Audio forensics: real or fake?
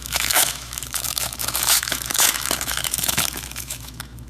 fake